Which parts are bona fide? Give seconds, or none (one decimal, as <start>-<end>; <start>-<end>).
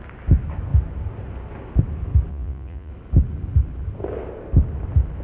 0.0-2.3; 2.9-5.2